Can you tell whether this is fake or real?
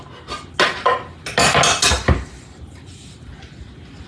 real